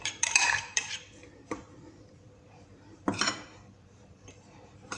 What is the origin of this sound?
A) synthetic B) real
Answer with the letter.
A